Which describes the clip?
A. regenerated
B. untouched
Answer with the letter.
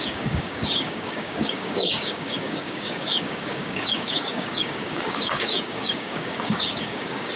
A